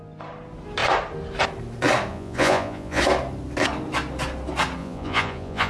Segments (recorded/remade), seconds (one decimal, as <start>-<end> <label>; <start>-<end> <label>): 0.0-2.1 recorded; 2.1-3.0 remade; 3.0-4.8 recorded; 4.8-5.7 remade